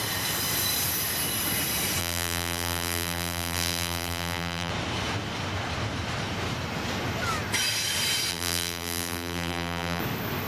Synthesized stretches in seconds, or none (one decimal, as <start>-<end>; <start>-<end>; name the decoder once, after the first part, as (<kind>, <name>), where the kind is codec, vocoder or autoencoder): 2.0-4.7 (vocoder, BigVGAN v2); 8.3-10.0